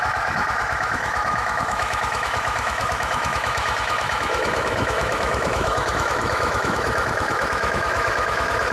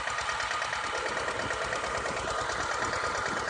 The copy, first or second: first